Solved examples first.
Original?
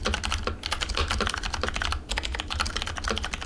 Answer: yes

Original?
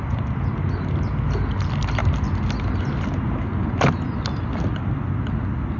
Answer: yes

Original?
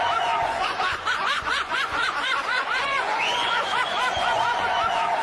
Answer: no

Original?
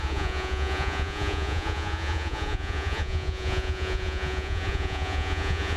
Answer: no